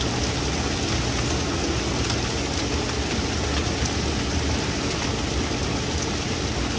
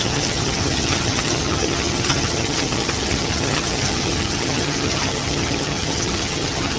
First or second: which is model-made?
second